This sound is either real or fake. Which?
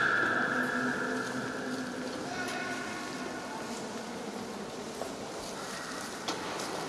real